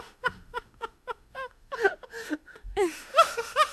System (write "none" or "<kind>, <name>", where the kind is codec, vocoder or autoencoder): autoencoder, DAC-VAE